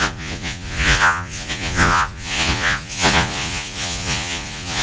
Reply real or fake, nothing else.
fake